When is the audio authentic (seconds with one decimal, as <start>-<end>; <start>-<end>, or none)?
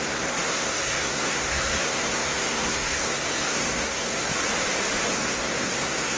4.3-5.1